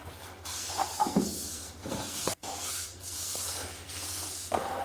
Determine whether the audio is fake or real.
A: fake